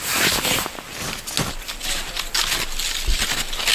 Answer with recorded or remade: recorded